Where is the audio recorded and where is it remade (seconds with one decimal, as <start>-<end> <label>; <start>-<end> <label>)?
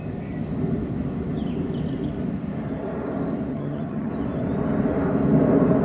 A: 0.0-3.5 recorded; 3.5-4.1 remade; 4.1-5.8 recorded